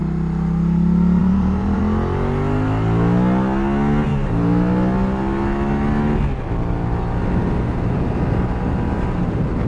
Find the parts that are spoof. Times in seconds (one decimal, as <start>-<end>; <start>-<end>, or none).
1.2-1.8